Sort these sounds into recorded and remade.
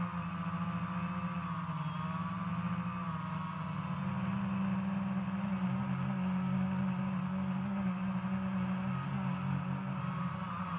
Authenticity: recorded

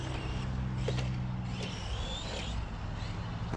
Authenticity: recorded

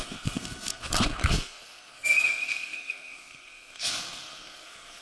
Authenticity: remade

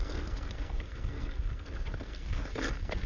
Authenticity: remade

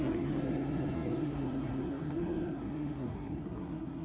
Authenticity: remade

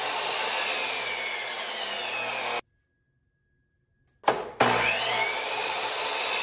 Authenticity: recorded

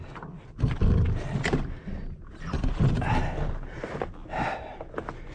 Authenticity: recorded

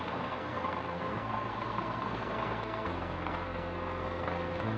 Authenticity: remade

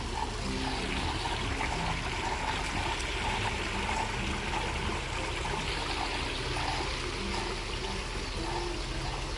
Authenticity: recorded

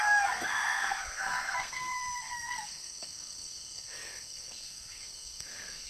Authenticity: remade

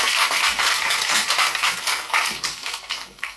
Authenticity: remade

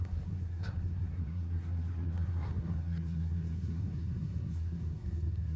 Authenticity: remade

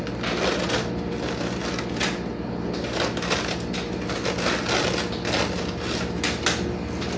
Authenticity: recorded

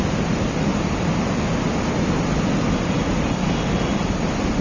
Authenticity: recorded